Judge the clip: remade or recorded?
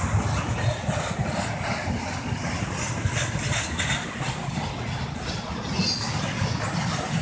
recorded